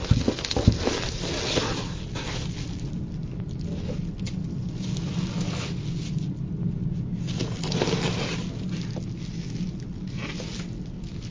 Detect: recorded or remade recorded